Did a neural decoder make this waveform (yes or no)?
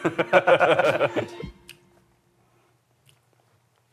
no